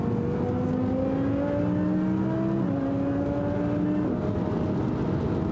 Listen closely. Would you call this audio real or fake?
real